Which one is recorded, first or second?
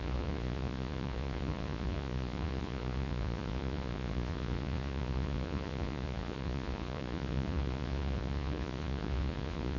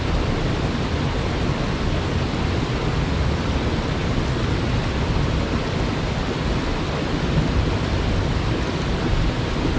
second